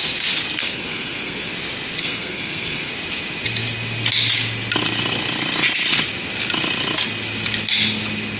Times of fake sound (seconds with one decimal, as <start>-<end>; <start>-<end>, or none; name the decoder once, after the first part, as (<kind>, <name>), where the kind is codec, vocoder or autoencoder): 0.6-1.5 (codec, SNAC); 2.0-2.9